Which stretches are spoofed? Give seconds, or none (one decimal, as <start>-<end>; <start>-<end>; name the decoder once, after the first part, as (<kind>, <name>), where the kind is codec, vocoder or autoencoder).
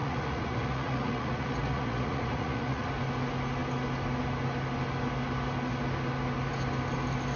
0.0-2.9 (vocoder, Vocos)